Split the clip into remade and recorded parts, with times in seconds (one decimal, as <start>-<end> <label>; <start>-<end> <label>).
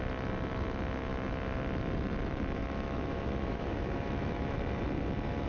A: 0.0-2.6 recorded; 2.6-4.6 remade; 4.6-5.5 recorded